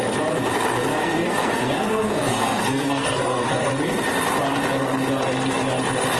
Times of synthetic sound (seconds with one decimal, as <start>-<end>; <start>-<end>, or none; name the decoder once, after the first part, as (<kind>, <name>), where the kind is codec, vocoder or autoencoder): 0.9-3.7 (codec, SNAC)